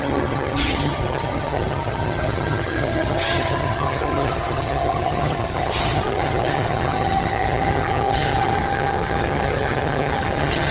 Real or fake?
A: fake